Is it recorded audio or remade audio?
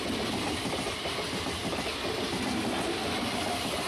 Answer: recorded